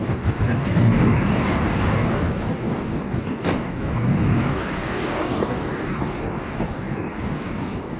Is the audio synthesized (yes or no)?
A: yes